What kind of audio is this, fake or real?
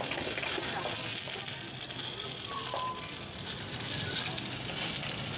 real